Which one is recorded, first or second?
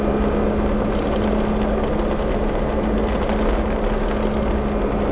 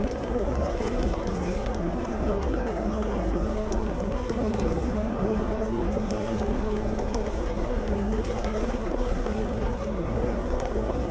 first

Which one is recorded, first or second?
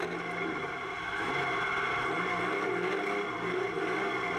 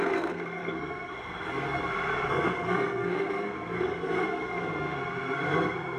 first